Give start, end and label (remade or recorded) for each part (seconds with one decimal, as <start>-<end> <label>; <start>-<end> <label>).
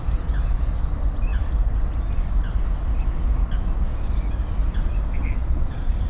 0.0-5.4 recorded; 5.4-6.1 remade